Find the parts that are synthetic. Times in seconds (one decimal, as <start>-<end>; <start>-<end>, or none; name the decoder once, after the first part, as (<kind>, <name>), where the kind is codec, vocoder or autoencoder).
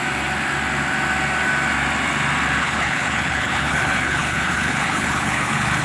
2.6-5.8 (codec, HILCodec)